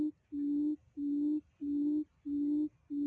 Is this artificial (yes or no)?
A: no